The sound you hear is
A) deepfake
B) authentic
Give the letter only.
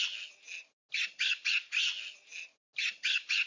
B